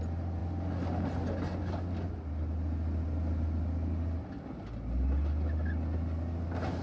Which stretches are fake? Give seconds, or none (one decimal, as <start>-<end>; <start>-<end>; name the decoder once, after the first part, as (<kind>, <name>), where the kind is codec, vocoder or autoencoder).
none